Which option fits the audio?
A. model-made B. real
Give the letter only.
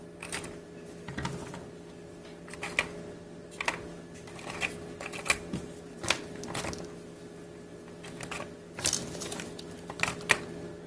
B